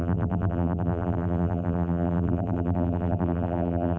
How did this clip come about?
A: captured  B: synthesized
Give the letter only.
B